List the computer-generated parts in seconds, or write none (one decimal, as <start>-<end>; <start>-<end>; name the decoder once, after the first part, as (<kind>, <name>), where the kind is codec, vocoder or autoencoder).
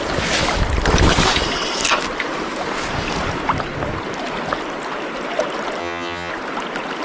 5.8-6.3 (vocoder, HiFi-GAN)